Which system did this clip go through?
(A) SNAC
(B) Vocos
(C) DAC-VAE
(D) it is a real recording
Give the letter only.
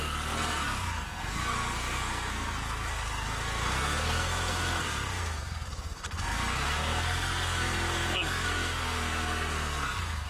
A